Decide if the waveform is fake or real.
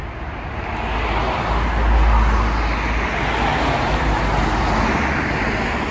real